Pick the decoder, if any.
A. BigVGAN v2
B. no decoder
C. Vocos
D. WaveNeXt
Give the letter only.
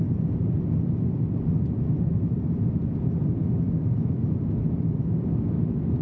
B